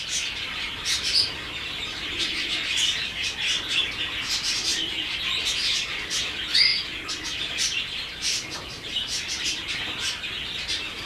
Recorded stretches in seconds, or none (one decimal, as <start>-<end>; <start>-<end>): 0.0-11.1